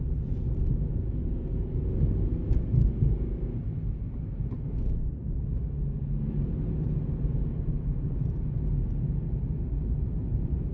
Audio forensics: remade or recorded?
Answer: recorded